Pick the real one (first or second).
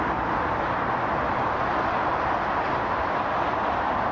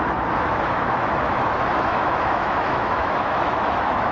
first